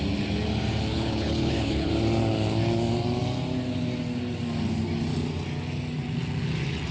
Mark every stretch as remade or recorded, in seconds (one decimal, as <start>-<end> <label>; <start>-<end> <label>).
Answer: 0.0-0.9 recorded; 0.9-1.9 remade; 1.9-6.9 recorded